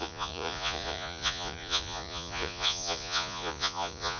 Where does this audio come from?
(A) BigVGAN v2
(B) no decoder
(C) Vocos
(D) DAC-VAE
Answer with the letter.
C